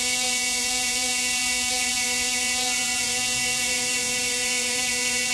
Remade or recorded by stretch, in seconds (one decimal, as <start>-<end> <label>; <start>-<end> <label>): 0.0-5.3 remade